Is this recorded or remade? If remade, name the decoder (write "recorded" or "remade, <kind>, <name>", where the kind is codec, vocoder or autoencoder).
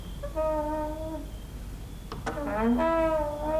recorded